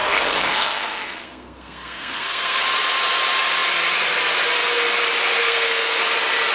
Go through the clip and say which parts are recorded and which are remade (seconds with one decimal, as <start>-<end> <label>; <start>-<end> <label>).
0.0-2.6 remade; 2.6-5.4 recorded; 5.4-6.0 remade; 6.0-6.5 recorded